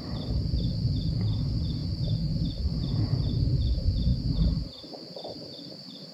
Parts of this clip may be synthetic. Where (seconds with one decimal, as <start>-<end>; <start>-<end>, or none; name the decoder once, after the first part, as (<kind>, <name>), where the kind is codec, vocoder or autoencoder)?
none